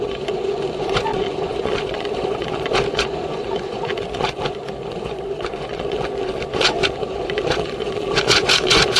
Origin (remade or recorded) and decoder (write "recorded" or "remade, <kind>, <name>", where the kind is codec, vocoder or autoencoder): remade, vocoder, Vocos